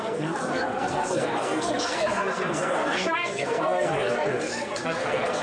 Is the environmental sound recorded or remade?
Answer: remade